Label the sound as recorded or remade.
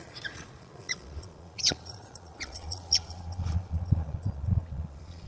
remade